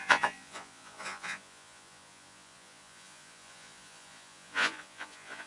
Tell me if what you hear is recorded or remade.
remade